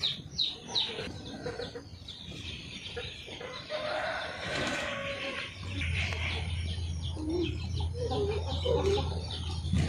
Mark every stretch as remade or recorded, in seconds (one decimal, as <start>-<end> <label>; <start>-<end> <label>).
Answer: 0.0-5.0 remade; 5.0-5.9 recorded; 5.9-9.9 remade